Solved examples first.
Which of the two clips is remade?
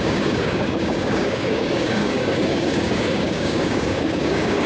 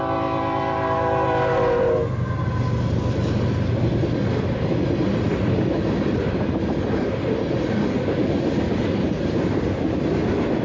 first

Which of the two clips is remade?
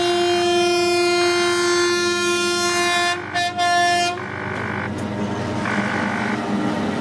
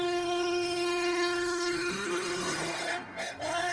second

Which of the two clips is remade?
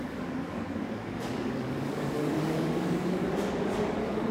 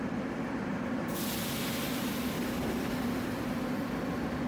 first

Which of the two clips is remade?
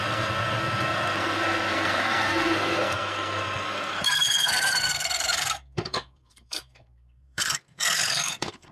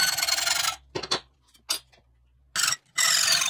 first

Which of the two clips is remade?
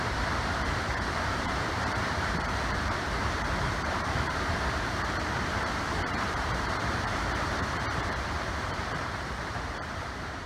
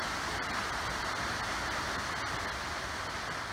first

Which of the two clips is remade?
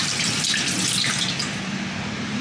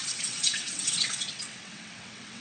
second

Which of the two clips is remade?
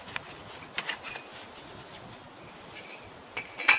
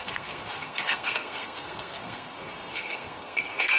second